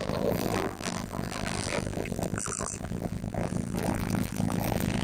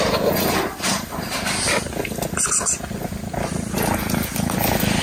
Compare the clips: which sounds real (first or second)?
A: second